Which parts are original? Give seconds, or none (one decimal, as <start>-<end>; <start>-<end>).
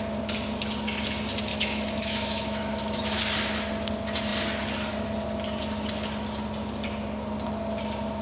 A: 0.0-1.5; 3.2-8.2